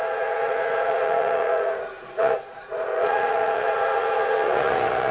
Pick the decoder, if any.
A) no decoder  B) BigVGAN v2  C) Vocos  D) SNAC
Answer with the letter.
C